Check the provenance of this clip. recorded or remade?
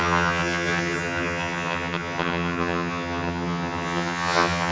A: remade